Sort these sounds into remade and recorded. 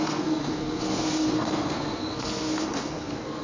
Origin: remade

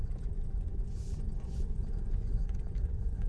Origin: remade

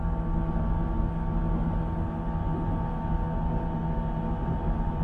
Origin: recorded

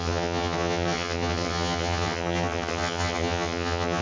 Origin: remade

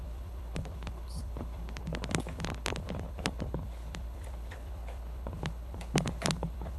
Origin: remade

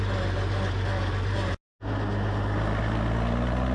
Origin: recorded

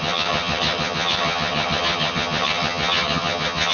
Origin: remade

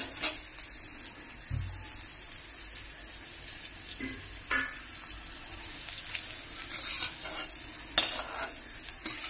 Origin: recorded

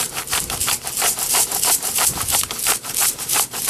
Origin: remade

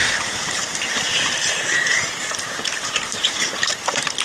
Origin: remade